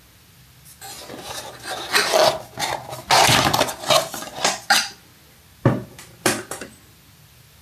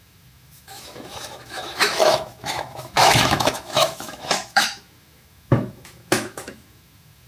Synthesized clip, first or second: second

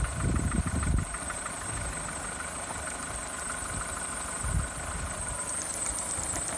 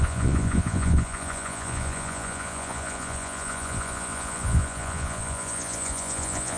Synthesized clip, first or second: second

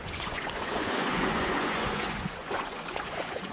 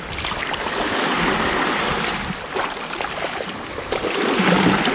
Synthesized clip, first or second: first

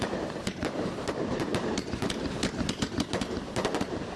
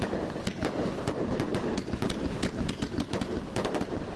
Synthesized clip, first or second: first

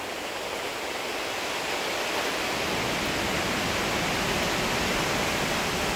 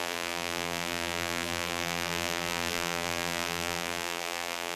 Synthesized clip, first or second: second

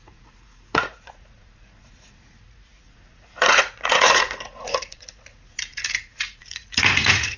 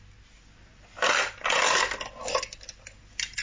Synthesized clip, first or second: first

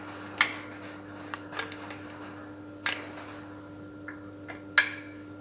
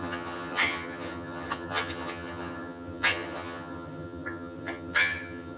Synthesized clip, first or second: second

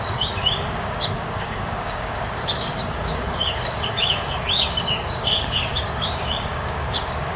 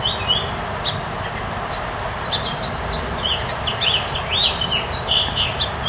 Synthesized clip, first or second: first